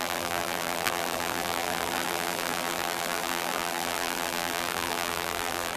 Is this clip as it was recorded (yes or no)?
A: no